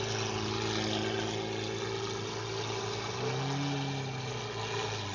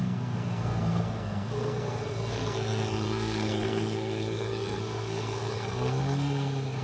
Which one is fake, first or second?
second